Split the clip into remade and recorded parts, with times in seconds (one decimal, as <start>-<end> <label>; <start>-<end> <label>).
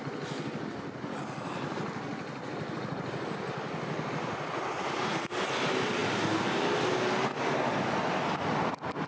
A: 0.0-9.1 recorded